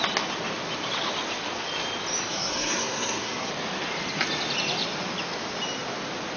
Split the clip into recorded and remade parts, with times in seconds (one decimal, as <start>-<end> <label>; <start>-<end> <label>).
0.0-2.3 recorded; 2.3-3.5 remade; 3.5-6.4 recorded